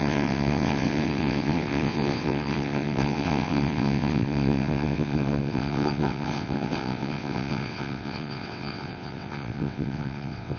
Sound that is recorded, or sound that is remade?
remade